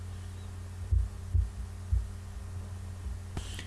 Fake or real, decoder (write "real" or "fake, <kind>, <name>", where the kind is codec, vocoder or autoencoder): real